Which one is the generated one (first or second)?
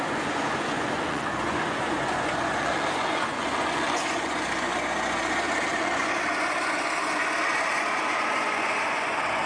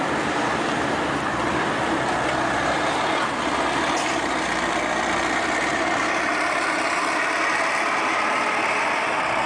first